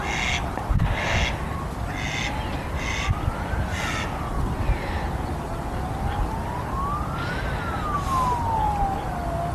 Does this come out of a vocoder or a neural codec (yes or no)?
no